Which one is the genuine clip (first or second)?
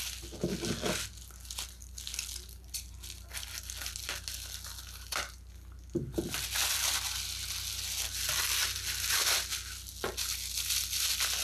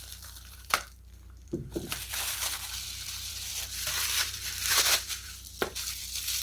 first